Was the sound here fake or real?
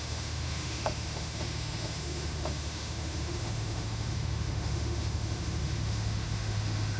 fake